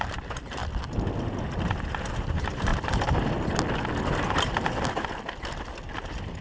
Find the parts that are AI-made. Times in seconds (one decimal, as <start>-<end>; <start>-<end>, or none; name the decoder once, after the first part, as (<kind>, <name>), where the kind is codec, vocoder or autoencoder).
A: 0.0-0.6 (vocoder, BigVGAN v2); 2.1-2.7; 5.9-6.4